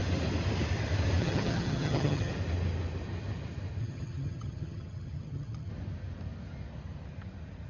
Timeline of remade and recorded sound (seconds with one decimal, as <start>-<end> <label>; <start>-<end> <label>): 0.0-1.2 recorded; 1.2-2.3 remade; 2.3-3.8 recorded; 3.8-5.7 remade; 5.7-7.7 recorded